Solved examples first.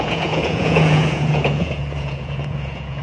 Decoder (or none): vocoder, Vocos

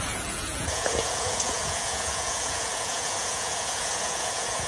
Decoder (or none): vocoder, Vocos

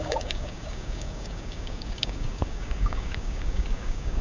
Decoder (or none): codec, DAC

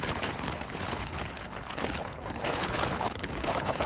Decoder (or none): codec, HILCodec